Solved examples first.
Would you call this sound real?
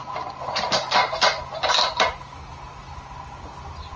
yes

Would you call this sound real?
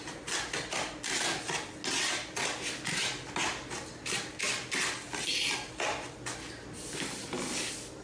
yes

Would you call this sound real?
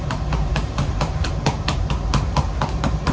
no